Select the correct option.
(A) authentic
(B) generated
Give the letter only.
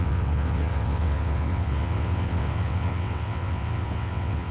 B